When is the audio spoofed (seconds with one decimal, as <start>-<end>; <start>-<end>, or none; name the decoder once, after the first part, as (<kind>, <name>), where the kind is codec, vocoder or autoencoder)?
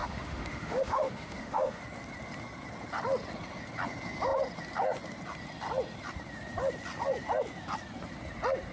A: 0.0-1.8 (autoencoder, DAC-VAE)